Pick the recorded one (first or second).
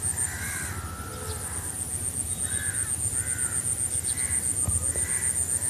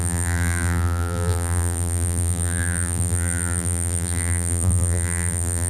first